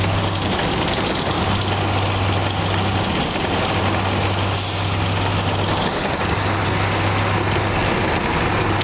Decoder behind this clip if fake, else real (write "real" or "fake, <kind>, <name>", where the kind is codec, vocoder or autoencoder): real